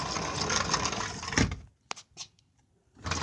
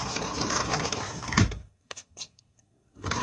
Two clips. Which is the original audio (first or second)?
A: first